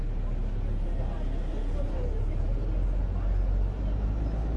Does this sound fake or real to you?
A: real